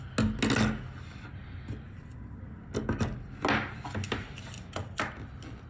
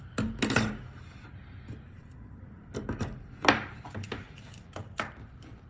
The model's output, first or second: second